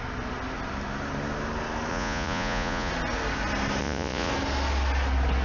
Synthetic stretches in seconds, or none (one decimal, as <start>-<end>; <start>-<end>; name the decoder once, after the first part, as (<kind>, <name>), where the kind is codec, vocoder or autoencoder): 1.9-2.9 (vocoder, Vocos); 3.8-4.3